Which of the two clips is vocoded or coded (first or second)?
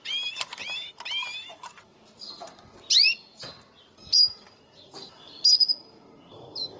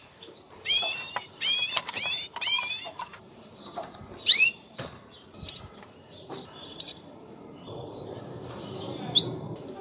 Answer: second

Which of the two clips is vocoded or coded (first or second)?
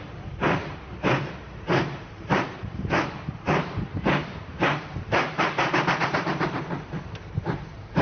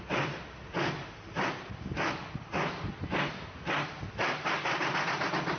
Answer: first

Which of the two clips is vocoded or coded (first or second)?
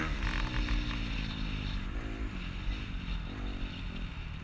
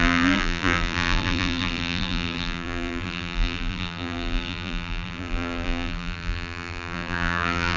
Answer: second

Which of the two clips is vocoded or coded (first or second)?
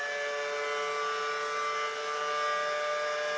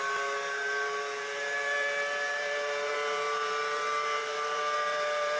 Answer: second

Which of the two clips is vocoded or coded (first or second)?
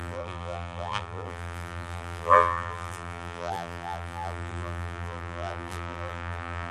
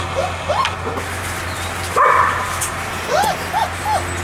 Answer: first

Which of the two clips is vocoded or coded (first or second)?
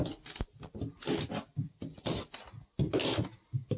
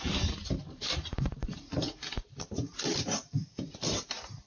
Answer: second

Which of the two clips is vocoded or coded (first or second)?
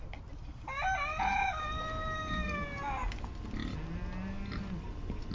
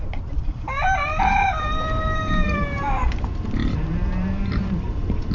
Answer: second